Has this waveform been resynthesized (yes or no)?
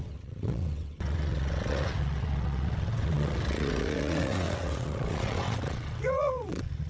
yes